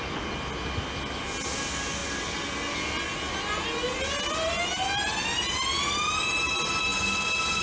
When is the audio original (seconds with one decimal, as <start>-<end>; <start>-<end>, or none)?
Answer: 0.0-7.6